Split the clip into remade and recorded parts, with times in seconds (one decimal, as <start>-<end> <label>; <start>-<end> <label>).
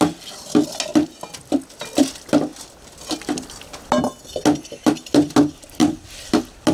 0.0-6.7 recorded